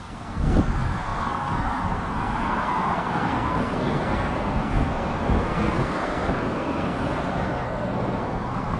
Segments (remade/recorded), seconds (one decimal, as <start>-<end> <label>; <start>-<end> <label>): 0.0-8.8 remade